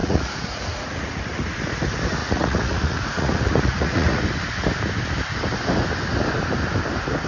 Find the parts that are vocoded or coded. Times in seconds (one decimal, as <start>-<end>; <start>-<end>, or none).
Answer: 0.0-1.2; 2.2-4.2